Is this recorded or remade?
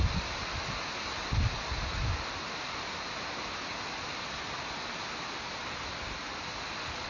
recorded